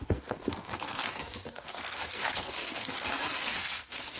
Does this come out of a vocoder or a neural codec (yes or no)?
yes